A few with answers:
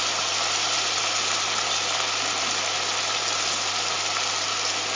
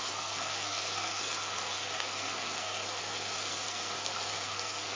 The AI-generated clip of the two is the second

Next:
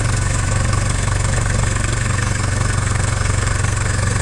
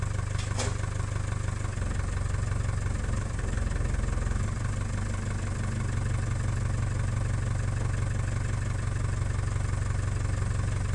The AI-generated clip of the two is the first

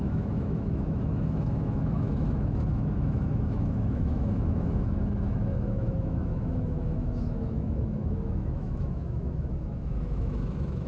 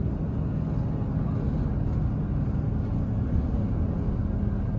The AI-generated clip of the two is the first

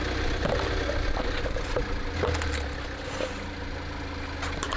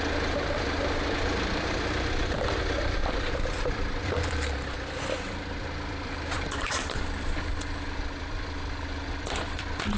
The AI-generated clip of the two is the second